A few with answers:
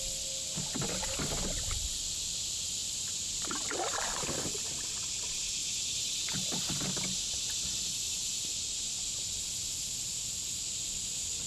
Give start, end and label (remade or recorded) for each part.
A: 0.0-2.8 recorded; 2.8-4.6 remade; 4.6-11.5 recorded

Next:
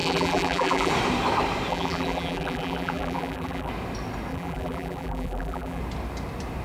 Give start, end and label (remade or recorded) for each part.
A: 0.0-0.9 remade; 0.9-1.7 recorded; 1.7-3.7 remade; 3.7-4.3 recorded; 4.3-5.8 remade; 5.8-6.6 recorded